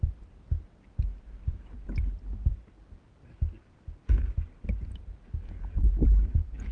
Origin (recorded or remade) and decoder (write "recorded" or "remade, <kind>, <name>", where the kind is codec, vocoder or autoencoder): recorded